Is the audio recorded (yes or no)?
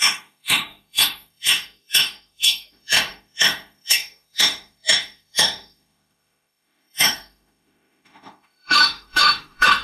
no